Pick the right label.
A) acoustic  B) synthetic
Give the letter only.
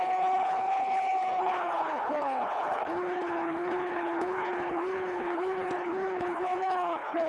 B